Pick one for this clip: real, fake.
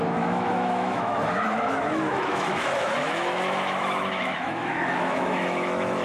fake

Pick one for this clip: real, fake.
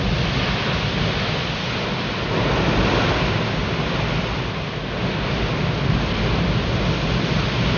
real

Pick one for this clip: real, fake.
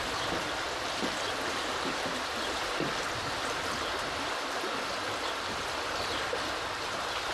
real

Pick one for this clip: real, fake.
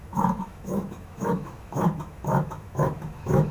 fake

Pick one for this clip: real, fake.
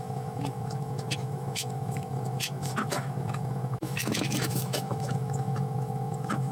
fake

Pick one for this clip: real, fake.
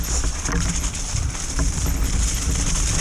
real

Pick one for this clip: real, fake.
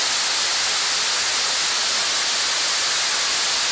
real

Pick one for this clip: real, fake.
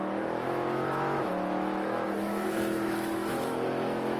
fake